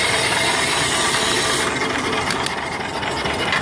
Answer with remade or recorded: recorded